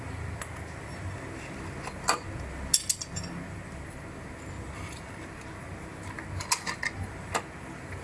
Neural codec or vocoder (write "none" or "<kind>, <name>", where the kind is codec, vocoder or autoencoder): none